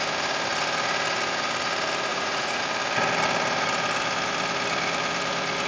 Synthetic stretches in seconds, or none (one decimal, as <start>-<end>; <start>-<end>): 2.1-2.6